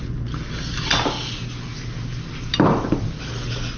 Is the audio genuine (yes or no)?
yes